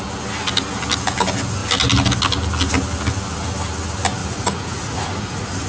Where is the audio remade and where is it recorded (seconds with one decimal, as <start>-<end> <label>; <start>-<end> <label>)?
0.0-4.2 recorded; 4.2-5.7 remade